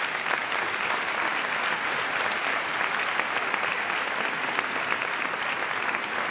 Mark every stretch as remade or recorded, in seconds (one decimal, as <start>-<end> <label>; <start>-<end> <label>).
0.0-6.3 recorded